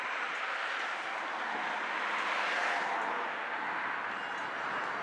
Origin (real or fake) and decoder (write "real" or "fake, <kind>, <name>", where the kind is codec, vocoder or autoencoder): real